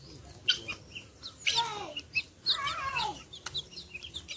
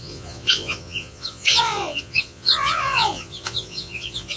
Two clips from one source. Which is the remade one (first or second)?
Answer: second